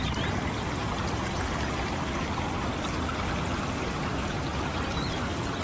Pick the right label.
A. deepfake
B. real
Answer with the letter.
B